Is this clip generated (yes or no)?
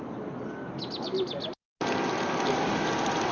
no